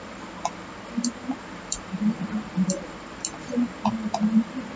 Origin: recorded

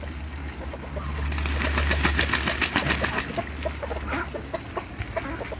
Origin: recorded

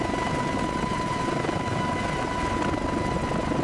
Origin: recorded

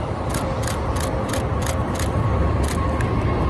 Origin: recorded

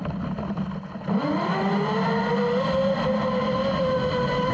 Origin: recorded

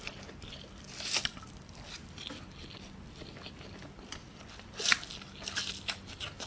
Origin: recorded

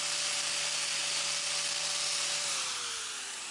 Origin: recorded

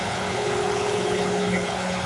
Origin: remade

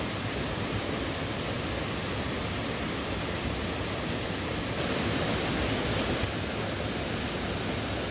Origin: recorded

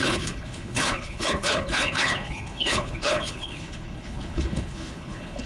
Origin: remade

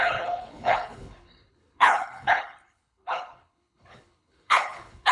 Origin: remade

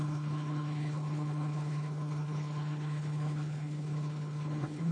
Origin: remade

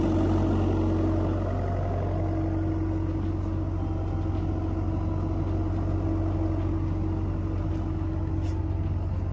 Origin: recorded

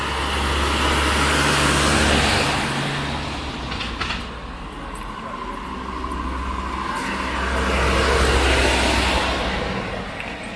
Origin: recorded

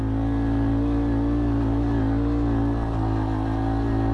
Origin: recorded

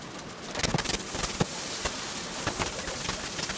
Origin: recorded